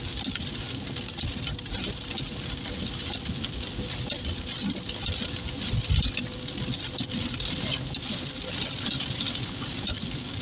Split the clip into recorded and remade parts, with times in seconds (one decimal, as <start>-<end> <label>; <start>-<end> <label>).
0.0-10.4 recorded